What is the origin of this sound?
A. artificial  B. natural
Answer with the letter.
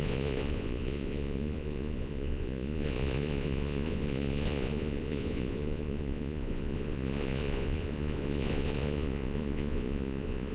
A